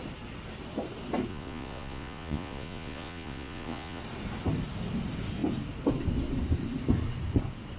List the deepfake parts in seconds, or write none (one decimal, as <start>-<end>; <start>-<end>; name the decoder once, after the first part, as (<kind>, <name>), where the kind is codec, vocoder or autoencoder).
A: 1.3-4.0 (vocoder, Vocos)